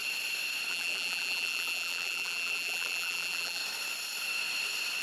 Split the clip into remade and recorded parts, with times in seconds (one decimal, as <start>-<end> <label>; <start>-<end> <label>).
0.0-0.7 recorded; 0.7-3.6 remade; 3.6-5.0 recorded